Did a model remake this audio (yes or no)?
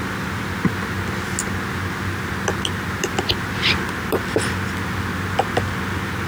no